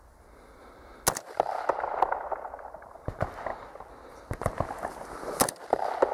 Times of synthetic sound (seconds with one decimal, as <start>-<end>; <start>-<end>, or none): none

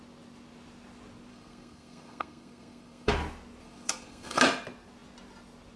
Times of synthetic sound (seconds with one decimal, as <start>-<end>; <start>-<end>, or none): 1.3-3.1; 3.6-4.4

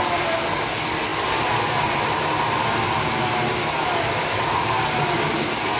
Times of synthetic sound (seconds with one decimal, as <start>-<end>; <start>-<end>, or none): none

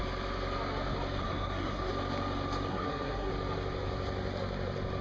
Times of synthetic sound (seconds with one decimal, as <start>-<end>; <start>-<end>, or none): 1.2-1.9; 2.7-3.3

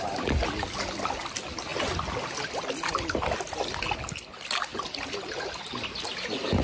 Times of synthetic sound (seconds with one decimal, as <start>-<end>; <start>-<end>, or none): none

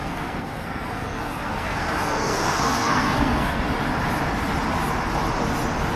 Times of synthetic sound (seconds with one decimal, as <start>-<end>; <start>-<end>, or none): 0.0-3.6

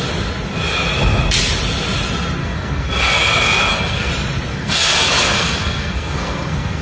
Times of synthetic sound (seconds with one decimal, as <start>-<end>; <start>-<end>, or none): 2.4-4.1; 4.5-6.8